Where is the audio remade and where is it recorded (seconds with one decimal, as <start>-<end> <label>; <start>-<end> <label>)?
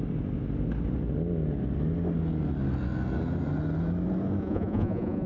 0.0-4.4 recorded; 4.4-5.3 remade